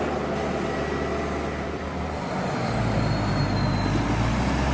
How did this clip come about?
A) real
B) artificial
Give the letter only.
A